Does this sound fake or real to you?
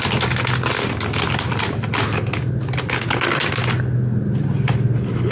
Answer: real